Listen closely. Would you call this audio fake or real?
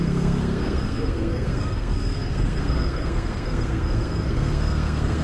fake